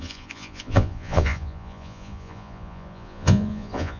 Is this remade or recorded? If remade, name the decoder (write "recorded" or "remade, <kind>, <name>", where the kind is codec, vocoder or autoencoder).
remade, vocoder, Vocos